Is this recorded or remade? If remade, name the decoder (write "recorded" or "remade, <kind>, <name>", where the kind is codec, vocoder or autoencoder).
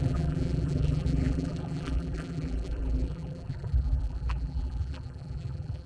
remade, vocoder, BigVGAN v2